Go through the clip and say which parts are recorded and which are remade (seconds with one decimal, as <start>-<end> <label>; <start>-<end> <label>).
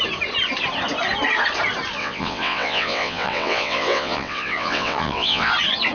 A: 0.0-2.0 recorded; 2.0-5.5 remade; 5.5-5.9 recorded